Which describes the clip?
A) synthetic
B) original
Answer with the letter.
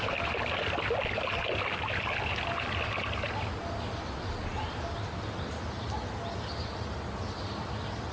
B